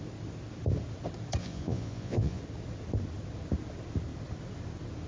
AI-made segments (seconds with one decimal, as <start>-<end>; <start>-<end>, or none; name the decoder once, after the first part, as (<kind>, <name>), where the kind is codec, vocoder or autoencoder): 1.4-2.4 (vocoder, Vocos)